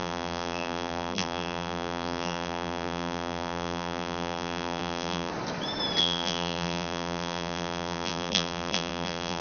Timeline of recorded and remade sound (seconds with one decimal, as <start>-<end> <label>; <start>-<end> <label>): 0.0-5.3 remade; 5.3-6.0 recorded; 6.0-9.4 remade

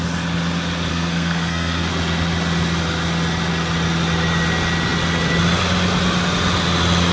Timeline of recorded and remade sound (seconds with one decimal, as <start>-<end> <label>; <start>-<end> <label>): 0.0-0.9 recorded; 0.9-1.9 remade; 1.9-7.1 recorded

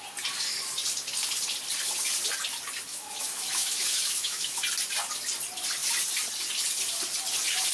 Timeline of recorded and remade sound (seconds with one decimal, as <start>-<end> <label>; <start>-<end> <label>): 0.0-2.9 recorded; 2.9-4.6 remade; 4.6-7.7 recorded

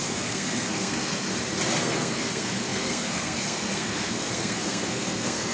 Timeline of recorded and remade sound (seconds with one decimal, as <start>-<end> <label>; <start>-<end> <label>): 0.0-1.3 remade; 1.3-1.8 recorded; 1.8-5.5 remade

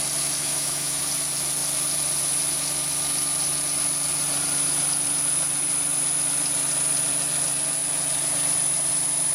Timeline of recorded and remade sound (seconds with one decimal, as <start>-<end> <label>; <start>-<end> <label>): 0.0-0.4 recorded; 0.4-1.0 remade; 1.0-9.3 recorded

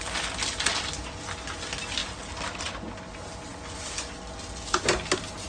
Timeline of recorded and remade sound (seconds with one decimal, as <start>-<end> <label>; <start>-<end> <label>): 0.0-5.5 recorded